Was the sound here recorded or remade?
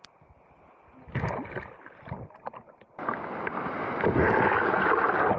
recorded